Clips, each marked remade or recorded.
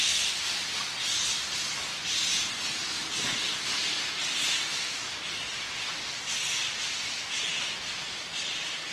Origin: recorded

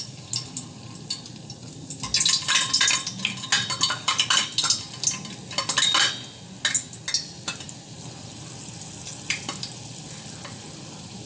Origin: recorded